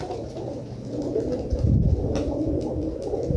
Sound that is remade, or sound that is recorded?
recorded